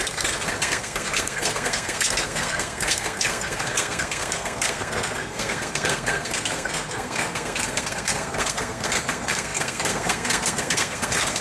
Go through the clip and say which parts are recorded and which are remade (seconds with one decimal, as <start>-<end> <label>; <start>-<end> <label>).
0.0-11.4 remade